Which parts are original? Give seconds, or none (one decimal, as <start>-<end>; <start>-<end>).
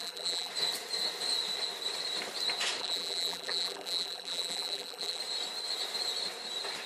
0.5-2.8; 5.2-6.9